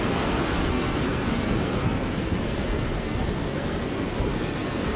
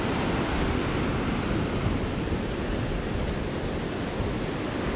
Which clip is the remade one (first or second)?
first